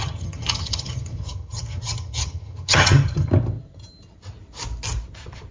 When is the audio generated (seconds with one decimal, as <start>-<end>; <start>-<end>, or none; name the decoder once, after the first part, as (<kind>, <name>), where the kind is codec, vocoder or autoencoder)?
0.0-3.3 (vocoder, HiFi-GAN)

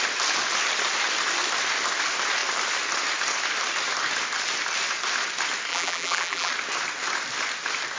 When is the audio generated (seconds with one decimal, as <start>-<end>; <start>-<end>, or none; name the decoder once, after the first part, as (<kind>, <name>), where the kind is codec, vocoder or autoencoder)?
5.7-6.5 (vocoder, BigVGAN v2)

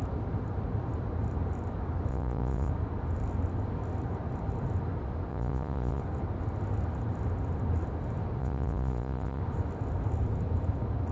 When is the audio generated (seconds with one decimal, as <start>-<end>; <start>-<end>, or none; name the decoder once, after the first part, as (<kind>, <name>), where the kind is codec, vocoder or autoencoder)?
2.1-2.7 (vocoder, Vocos); 5.3-6.0; 8.4-9.4

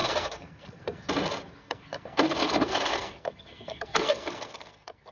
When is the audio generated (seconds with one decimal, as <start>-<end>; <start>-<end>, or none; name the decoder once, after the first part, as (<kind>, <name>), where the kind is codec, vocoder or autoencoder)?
0.0-1.1 (codec, SNAC); 1.6-5.1

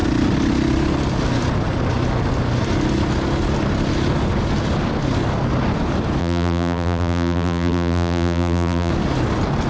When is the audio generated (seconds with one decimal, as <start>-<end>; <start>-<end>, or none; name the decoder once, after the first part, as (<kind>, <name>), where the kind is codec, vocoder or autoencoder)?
6.2-8.9 (vocoder, BigVGAN v2)

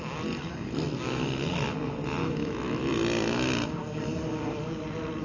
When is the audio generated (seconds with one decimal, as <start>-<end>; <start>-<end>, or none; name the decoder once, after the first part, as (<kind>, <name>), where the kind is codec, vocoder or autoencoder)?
2.2-2.9 (autoencoder, DAC-VAE)

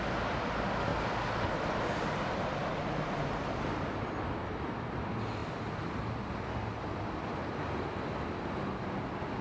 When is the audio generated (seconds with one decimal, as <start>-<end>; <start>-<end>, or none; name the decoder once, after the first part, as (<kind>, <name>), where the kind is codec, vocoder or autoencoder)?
none

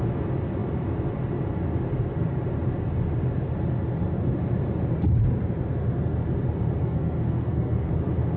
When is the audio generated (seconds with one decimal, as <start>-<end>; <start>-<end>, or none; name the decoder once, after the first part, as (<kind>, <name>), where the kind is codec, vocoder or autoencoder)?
6.8-7.9 (codec, SNAC)